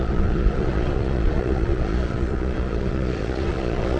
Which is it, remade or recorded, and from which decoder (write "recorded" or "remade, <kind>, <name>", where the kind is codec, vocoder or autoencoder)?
remade, vocoder, Vocos